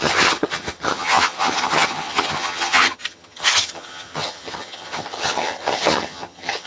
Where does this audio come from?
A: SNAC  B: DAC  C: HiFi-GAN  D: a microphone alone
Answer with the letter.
C